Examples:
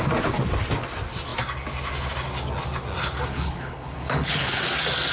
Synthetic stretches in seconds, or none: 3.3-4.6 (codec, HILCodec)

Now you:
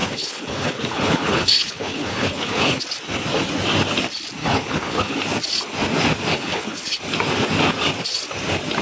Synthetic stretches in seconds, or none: 0.0-2.8 (codec, HILCodec); 4.4-5.2; 6.3-7.0

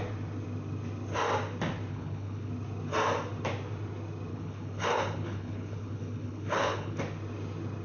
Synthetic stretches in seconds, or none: 1.9-2.5 (codec, HILCodec); 4.3-7.0

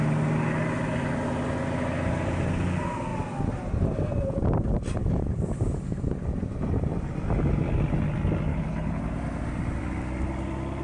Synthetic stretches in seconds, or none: 8.5-9.0 (codec, HILCodec)

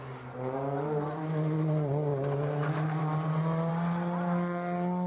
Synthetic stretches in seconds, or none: none

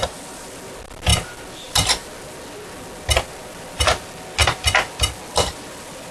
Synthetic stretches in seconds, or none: none

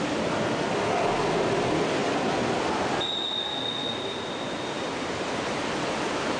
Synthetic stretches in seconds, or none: none

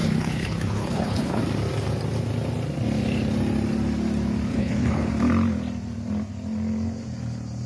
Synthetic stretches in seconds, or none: 0.0-1.4 (codec, HILCodec); 4.5-5.1